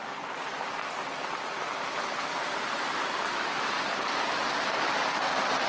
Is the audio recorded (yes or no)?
yes